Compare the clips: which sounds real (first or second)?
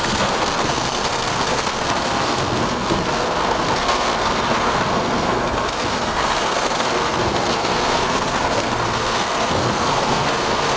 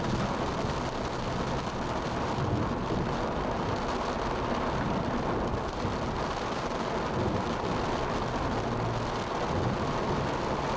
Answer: second